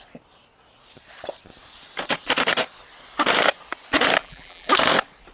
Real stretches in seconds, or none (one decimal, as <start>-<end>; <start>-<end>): 0.0-4.2; 4.7-5.3